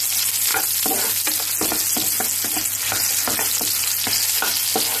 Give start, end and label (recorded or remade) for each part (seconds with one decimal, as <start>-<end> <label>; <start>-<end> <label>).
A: 0.0-5.0 recorded